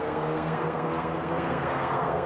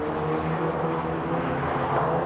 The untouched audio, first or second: second